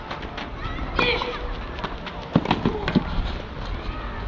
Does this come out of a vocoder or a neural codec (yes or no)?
no